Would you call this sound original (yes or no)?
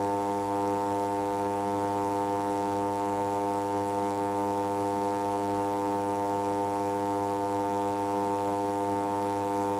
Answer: no